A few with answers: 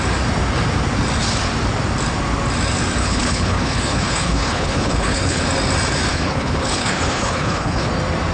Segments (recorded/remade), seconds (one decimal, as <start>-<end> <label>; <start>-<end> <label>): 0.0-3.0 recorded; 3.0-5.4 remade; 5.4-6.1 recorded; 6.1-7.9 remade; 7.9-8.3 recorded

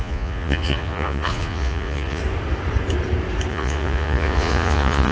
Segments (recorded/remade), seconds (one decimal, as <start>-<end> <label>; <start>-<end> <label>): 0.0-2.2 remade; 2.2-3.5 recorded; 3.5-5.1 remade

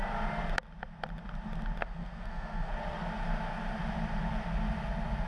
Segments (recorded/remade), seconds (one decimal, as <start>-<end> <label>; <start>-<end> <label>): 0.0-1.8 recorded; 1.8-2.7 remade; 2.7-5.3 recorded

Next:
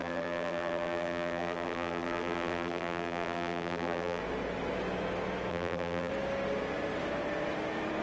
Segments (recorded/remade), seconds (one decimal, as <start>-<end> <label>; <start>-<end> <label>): 0.0-4.2 remade; 4.2-5.5 recorded; 5.5-6.1 remade; 6.1-8.0 recorded

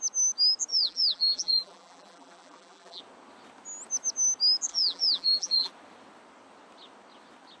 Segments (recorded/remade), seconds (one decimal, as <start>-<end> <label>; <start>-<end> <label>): 0.0-0.7 recorded; 0.7-3.0 remade; 3.0-4.7 recorded; 4.7-5.7 remade; 5.7-7.6 recorded